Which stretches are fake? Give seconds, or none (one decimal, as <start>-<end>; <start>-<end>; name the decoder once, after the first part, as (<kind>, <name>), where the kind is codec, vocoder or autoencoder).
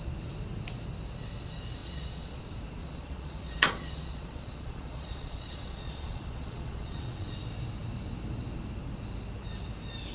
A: 1.8-2.4 (vocoder, Vocos); 2.8-7.3